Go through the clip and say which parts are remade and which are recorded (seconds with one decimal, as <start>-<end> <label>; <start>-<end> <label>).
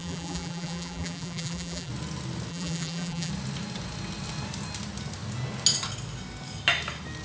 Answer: 0.0-1.9 remade; 1.9-2.5 recorded; 2.5-3.3 remade; 3.3-7.2 recorded